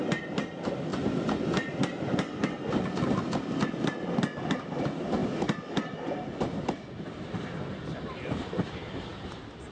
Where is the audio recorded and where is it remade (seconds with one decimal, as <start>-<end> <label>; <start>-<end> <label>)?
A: 0.0-0.9 remade; 0.9-4.8 recorded; 4.8-5.2 remade; 5.2-8.0 recorded; 8.0-9.7 remade